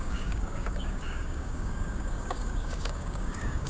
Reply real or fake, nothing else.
fake